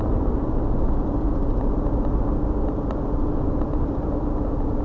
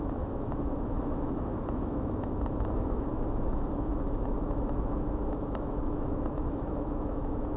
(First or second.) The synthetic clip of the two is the second